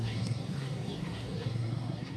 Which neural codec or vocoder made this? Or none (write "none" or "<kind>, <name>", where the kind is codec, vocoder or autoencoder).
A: codec, SNAC